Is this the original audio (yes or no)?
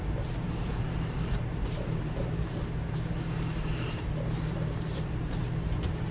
no